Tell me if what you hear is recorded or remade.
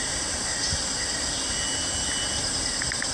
recorded